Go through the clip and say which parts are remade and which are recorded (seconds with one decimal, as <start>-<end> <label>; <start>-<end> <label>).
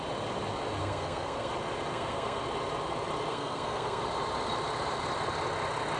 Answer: 0.0-0.8 recorded; 0.8-1.5 remade; 1.5-1.9 recorded; 1.9-2.4 remade; 2.4-3.3 recorded; 3.3-4.0 remade; 4.0-6.0 recorded